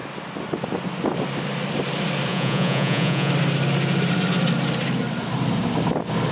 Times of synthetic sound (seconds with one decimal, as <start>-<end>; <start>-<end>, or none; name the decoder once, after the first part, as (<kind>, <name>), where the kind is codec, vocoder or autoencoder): 2.3-3.3 (vocoder, Vocos)